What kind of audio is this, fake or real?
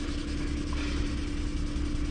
real